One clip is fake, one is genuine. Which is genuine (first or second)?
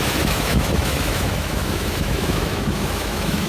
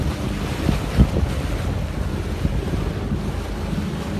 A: second